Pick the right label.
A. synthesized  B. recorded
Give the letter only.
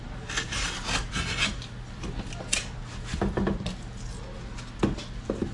B